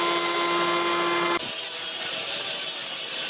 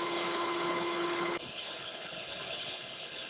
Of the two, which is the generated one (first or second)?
second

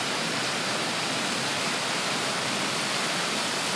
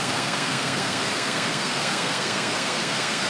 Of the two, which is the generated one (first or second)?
second